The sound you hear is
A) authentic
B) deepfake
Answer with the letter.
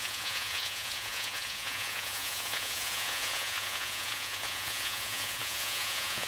B